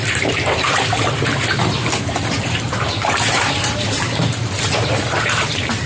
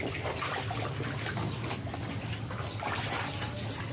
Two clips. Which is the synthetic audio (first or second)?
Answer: first